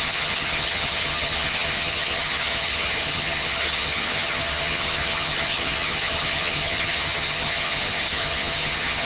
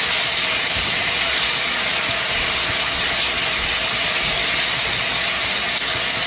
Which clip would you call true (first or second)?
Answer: second